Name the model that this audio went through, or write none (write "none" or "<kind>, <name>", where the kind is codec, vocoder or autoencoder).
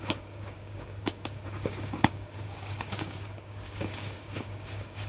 codec, DAC